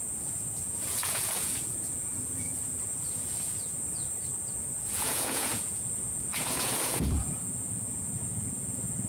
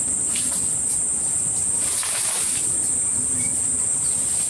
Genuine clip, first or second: second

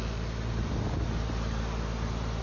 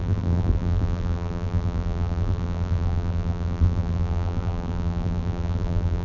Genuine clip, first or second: first